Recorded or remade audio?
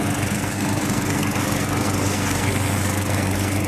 remade